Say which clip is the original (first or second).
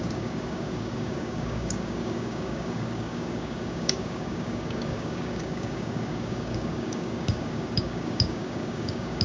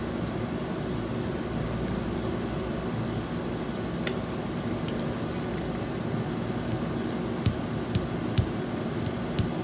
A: second